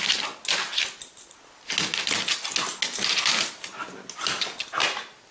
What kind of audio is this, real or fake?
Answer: real